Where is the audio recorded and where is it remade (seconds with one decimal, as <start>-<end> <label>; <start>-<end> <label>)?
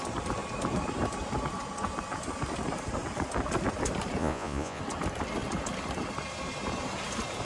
0.0-4.2 recorded; 4.2-4.8 remade; 4.8-7.4 recorded